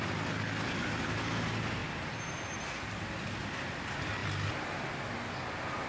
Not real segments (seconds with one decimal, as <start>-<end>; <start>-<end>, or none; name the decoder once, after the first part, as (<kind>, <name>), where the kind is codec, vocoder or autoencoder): none